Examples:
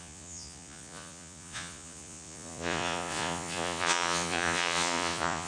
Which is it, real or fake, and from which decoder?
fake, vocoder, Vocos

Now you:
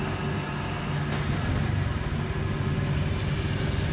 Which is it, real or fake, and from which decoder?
real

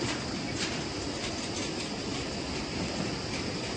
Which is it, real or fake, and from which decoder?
real